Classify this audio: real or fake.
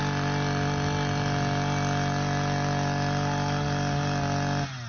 real